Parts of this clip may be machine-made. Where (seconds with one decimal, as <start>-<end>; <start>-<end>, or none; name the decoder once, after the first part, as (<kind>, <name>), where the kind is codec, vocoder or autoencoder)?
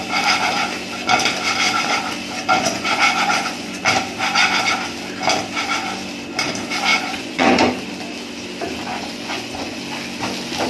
2.5-3.8 (vocoder, Vocos); 6.9-7.7; 8.9-9.8